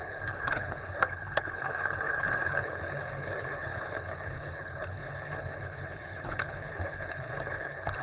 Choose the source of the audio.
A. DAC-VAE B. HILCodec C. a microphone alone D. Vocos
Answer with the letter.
B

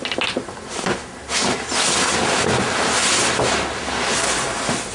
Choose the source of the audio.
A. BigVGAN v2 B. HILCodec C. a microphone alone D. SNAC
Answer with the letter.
C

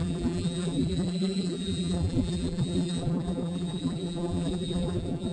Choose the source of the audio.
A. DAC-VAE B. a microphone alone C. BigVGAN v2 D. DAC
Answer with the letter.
C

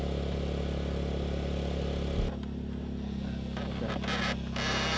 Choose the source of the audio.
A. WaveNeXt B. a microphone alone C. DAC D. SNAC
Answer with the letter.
B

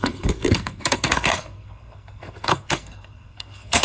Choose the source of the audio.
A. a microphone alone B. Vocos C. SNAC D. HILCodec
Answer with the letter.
C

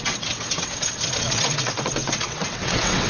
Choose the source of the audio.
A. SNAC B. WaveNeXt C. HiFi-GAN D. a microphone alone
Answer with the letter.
B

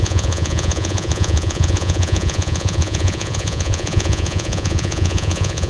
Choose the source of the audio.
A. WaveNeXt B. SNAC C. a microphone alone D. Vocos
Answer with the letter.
D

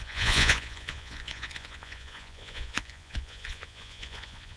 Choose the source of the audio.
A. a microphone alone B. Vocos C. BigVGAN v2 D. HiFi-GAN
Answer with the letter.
B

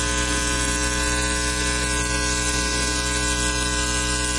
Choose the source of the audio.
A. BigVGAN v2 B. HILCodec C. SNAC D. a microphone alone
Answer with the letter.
D